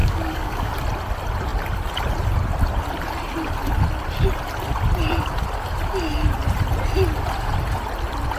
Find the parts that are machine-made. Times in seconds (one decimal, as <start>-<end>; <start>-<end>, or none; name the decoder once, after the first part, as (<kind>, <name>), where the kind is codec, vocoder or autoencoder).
0.0-0.7 (codec, DAC)